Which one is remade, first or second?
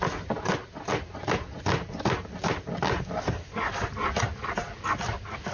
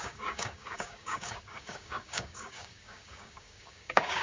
second